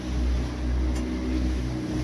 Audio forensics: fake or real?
real